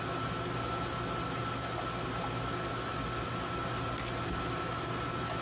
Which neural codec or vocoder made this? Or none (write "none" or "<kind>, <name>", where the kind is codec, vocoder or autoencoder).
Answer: none